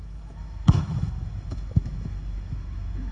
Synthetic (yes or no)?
yes